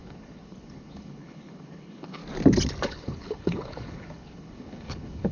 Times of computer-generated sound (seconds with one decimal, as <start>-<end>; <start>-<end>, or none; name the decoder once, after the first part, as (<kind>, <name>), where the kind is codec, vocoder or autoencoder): 0.0-2.2 (codec, HILCodec); 2.9-5.3